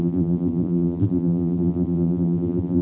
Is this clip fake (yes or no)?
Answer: yes